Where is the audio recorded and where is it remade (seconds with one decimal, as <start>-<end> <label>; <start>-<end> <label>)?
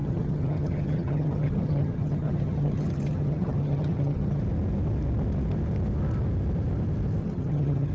0.0-4.4 remade; 4.4-7.2 recorded; 7.2-7.9 remade